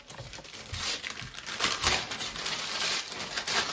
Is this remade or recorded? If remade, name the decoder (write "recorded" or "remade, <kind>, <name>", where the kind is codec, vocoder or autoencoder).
recorded